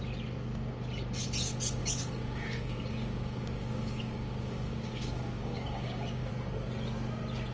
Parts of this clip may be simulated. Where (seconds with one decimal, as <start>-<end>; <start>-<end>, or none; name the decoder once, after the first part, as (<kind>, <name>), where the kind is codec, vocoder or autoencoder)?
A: 1.8-6.3 (codec, DAC)